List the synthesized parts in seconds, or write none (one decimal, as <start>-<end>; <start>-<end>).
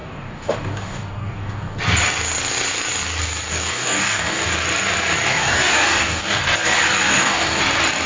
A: 0.0-1.8; 3.5-4.5; 5.3-6.4; 7.0-7.6